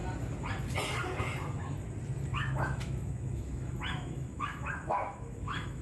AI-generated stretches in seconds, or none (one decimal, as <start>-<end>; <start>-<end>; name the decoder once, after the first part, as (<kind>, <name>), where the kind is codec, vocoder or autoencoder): 2.3-5.8 (autoencoder, DAC-VAE)